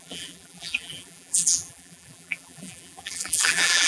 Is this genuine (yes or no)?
no